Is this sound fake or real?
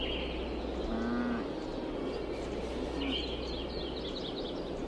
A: real